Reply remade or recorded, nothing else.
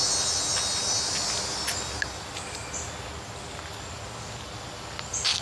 recorded